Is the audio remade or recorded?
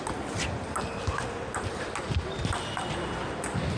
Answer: recorded